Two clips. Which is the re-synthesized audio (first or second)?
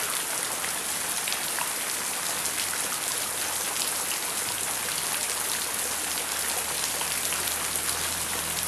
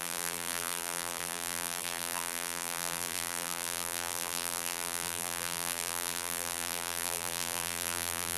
second